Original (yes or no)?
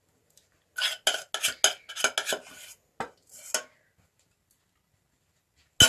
yes